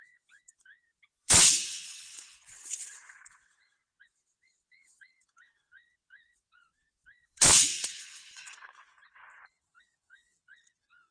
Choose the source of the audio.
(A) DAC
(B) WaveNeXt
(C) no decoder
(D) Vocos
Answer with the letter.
B